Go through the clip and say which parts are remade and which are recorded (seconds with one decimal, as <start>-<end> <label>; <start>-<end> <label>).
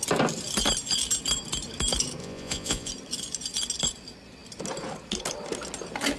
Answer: 0.0-2.2 recorded; 2.2-2.9 remade; 2.9-6.2 recorded